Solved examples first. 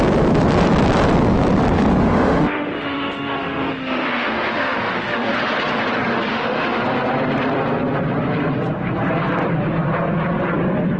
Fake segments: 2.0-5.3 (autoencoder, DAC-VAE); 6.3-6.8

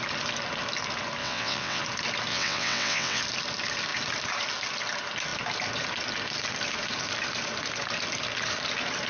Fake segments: 1.2-1.8 (vocoder, WaveNeXt); 2.3-3.2

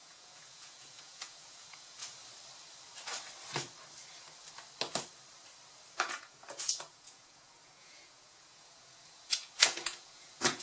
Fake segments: 0.0-2.0 (vocoder, Vocos); 6.0-10.6